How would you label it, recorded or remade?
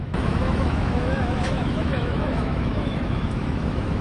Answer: remade